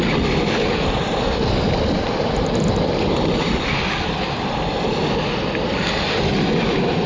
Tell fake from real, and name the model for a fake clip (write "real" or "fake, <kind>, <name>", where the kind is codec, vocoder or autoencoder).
real